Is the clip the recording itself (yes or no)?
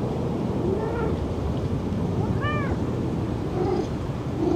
no